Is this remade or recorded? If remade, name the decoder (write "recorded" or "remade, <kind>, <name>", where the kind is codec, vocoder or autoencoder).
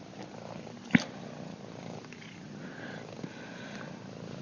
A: recorded